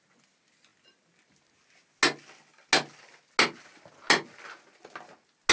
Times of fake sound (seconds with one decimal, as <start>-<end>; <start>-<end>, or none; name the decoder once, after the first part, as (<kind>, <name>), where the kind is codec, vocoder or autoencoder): none